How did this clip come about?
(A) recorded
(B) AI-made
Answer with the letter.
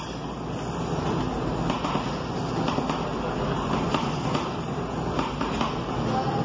A